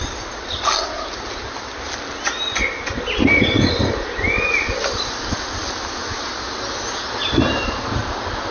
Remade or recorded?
recorded